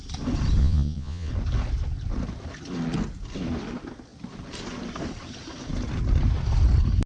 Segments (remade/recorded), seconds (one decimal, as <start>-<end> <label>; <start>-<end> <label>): 0.0-0.6 recorded; 0.6-1.3 remade; 1.3-7.1 recorded